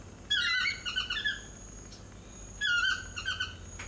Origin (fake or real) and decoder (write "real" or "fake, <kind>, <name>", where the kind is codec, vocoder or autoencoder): real